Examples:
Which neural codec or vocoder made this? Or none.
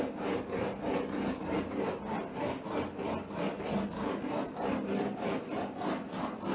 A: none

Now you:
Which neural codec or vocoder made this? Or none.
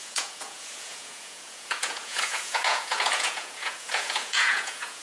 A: vocoder, Vocos